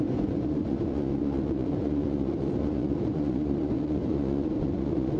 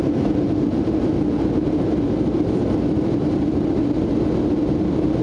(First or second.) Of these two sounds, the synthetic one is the first